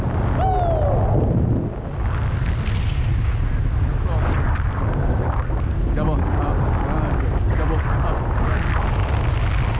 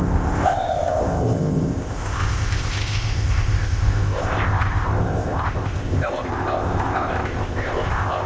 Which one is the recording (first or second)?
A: first